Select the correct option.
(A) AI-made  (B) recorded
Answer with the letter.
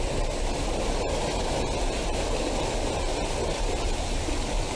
B